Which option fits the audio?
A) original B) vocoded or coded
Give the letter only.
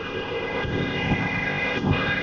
B